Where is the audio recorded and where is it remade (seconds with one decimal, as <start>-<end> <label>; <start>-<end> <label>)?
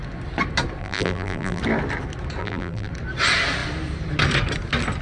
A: 0.0-0.8 recorded; 0.8-1.6 remade; 1.6-2.4 recorded; 2.4-2.9 remade; 2.9-5.0 recorded